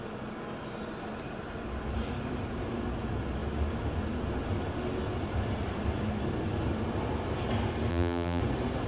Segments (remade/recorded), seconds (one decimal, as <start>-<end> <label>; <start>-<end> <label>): 0.0-7.9 recorded; 7.9-8.4 remade; 8.4-8.9 recorded

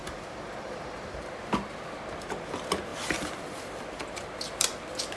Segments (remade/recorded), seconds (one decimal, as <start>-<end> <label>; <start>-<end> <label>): 0.0-1.5 remade; 1.5-2.9 recorded; 2.9-4.2 remade; 4.2-5.2 recorded

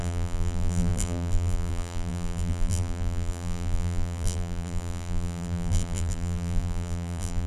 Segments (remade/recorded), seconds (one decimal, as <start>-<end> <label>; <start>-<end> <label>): 0.0-7.5 remade

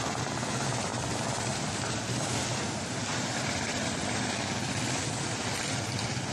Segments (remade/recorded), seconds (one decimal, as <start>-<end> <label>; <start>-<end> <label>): 0.0-3.7 recorded; 3.7-4.4 remade; 4.4-6.3 recorded

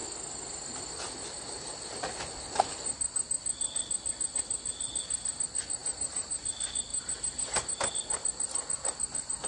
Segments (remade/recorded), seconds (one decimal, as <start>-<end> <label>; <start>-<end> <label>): 0.0-5.8 recorded; 5.8-6.4 remade; 6.4-6.9 recorded; 6.9-7.9 remade; 7.9-9.5 recorded

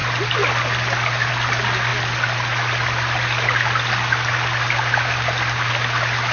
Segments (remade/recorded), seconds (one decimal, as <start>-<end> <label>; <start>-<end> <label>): 0.0-6.3 recorded

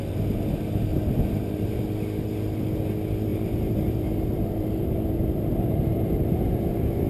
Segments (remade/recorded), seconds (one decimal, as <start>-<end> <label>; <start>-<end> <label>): 0.0-0.9 recorded; 0.9-1.8 remade; 1.8-3.3 recorded; 3.3-7.1 remade